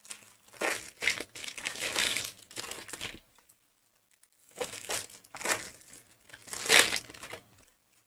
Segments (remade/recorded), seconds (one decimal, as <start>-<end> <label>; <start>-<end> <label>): 0.0-1.4 recorded; 1.4-2.2 remade; 2.2-4.4 recorded; 4.4-4.9 remade; 4.9-8.1 recorded